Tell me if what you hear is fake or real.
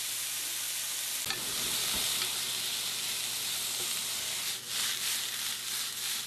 real